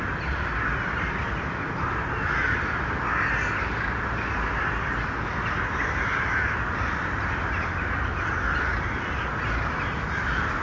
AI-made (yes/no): no